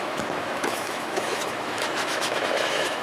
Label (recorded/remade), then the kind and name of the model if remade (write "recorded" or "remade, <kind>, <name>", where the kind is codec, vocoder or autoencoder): remade, autoencoder, DAC-VAE